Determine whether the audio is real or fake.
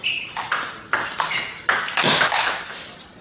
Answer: real